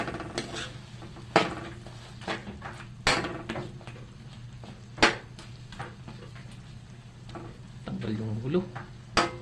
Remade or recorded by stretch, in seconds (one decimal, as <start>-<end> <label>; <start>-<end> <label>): 0.0-9.4 recorded